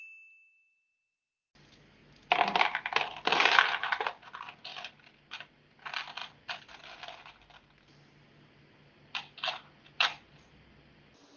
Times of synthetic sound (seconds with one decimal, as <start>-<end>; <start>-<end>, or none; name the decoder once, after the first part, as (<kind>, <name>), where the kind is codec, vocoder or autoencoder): none